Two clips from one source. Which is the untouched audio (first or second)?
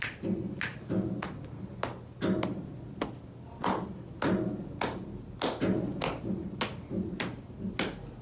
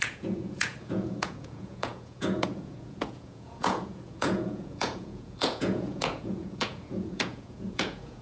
first